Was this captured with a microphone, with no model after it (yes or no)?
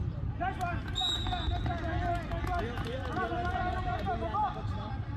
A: yes